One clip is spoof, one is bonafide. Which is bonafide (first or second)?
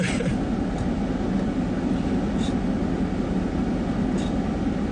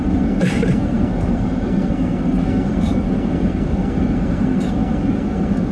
first